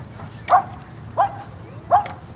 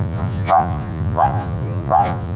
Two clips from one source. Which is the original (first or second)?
first